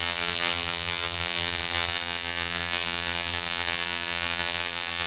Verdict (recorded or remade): remade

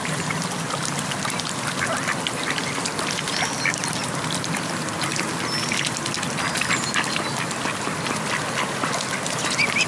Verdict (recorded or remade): recorded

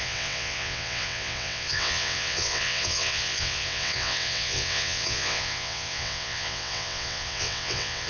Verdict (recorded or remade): remade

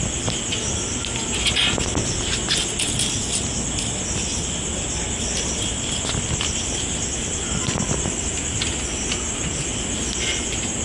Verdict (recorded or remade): recorded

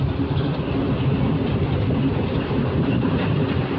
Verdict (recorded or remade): remade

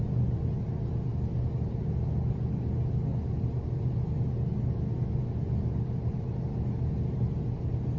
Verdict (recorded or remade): recorded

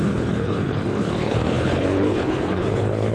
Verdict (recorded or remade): remade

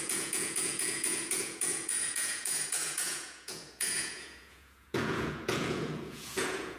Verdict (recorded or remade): remade